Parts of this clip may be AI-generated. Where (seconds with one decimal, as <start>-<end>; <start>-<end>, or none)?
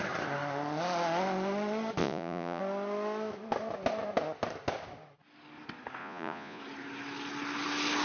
2.0-2.6; 6.0-6.6